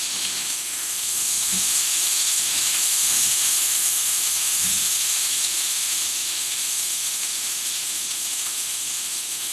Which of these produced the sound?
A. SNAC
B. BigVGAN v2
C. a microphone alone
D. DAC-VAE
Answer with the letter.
D